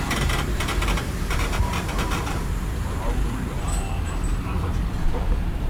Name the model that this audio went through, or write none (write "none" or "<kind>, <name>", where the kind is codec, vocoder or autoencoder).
vocoder, BigVGAN v2